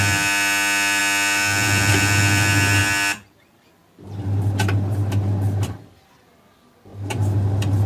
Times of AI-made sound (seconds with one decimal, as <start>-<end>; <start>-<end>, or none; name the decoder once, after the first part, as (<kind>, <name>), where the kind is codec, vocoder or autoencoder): none